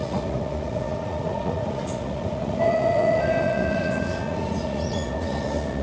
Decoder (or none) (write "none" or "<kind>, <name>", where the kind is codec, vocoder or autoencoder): vocoder, Vocos